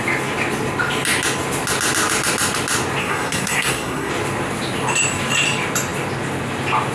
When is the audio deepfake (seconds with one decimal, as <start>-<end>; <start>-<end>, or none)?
3.0-4.1